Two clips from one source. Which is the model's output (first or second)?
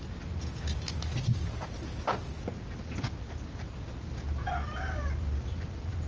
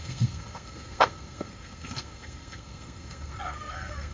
second